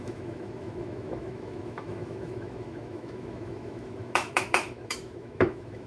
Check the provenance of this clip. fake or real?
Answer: fake